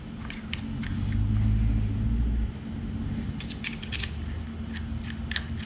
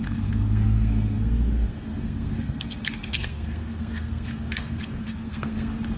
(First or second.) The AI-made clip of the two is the second